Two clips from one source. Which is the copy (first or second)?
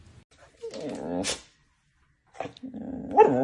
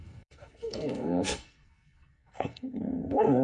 second